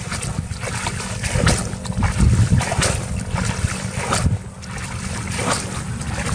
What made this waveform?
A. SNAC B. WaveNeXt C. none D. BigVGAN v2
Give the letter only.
C